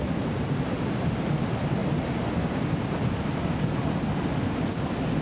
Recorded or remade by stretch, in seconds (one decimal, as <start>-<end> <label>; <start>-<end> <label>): 0.0-5.2 recorded